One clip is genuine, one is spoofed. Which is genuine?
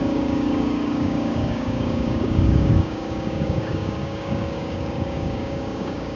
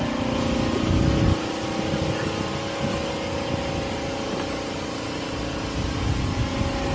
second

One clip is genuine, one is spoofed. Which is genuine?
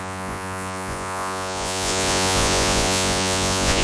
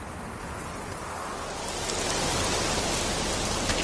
second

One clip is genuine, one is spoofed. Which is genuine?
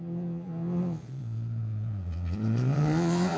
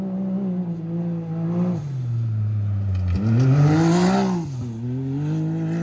second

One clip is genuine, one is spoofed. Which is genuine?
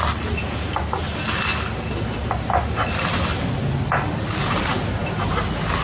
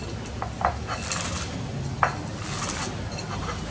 second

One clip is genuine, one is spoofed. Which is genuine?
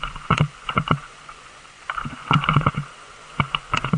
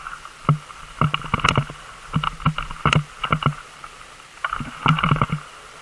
second